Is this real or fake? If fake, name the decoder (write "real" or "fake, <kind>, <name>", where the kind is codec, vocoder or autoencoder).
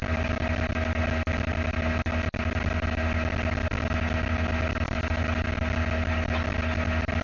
real